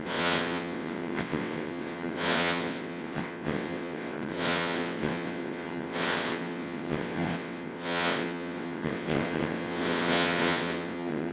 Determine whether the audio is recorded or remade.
remade